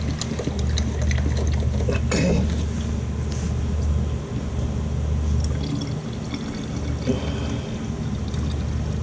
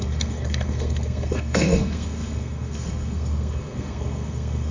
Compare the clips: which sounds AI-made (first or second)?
second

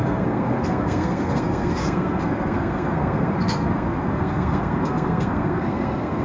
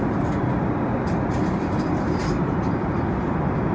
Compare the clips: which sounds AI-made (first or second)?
first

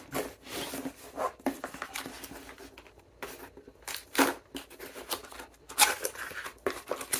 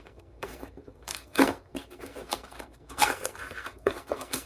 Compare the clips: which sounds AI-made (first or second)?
second